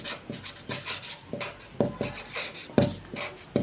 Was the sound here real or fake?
real